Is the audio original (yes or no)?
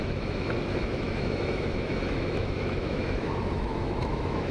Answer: no